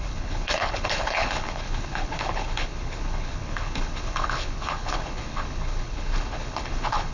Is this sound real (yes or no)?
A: no